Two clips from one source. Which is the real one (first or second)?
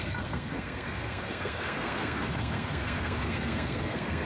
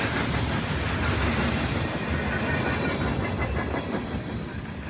second